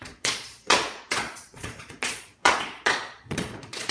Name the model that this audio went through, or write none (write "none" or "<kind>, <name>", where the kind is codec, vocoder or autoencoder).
vocoder, Vocos